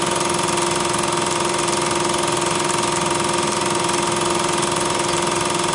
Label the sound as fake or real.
real